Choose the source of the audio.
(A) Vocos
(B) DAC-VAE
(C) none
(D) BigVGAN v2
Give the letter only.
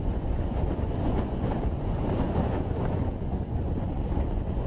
A